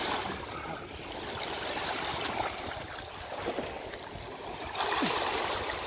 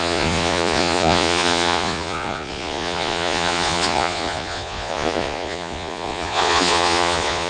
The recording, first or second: first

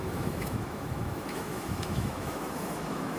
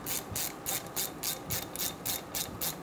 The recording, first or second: second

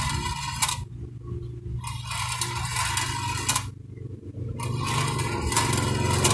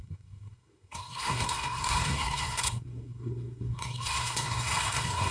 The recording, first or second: first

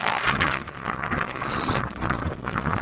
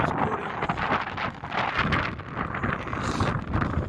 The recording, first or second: second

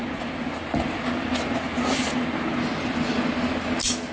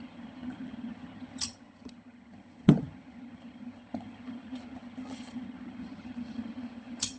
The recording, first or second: first